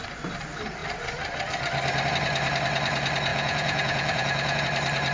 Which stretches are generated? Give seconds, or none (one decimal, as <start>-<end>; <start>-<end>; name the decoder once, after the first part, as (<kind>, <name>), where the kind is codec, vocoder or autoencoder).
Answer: 3.3-4.6 (vocoder, Vocos)